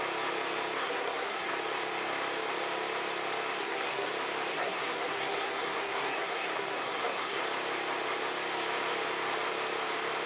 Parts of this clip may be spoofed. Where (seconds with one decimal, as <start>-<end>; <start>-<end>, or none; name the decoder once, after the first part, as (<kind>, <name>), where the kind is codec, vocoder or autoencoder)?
0.8-1.5 (codec, SNAC); 3.6-4.1; 4.5-7.4